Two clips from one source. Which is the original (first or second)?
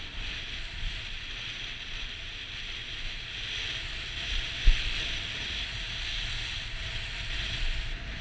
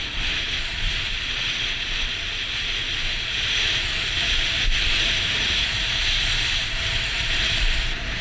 first